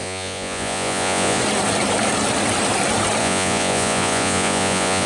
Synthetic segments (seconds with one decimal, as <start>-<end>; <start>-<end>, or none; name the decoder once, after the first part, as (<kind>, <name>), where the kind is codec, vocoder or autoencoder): 0.0-1.4 (vocoder, Vocos); 3.2-5.1